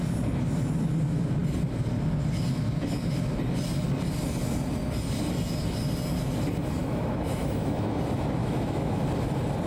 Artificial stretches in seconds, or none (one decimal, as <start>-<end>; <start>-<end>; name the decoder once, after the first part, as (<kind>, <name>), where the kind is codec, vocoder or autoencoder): 6.8-8.0 (autoencoder, DAC-VAE); 8.4-9.0